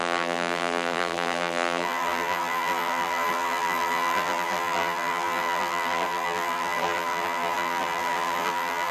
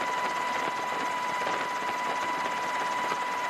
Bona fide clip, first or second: second